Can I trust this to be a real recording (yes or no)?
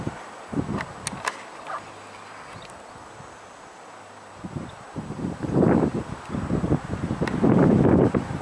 yes